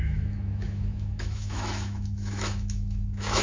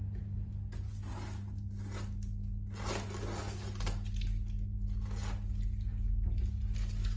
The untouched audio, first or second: second